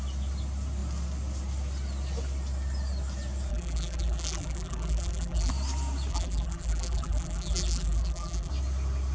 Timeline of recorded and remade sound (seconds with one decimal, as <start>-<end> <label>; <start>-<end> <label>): 0.0-3.5 recorded; 3.5-5.5 remade; 5.5-6.1 recorded; 6.1-8.5 remade; 8.5-9.1 recorded